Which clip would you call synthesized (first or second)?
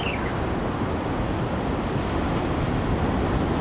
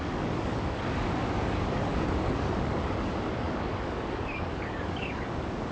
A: second